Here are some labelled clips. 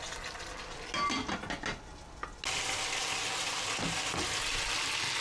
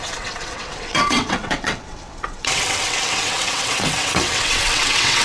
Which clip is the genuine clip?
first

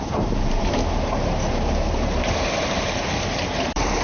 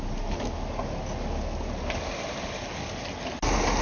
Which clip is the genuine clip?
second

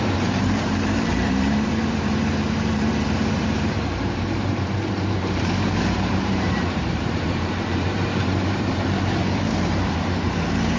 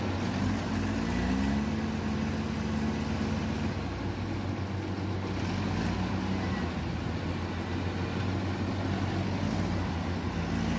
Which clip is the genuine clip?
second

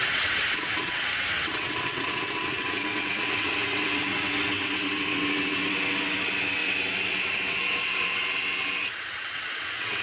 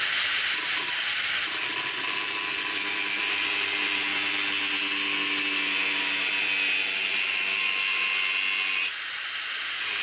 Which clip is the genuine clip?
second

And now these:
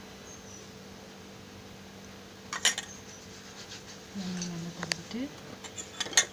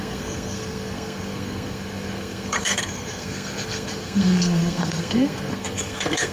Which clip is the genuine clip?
first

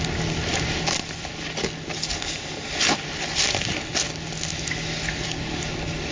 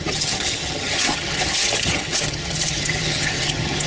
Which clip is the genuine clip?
first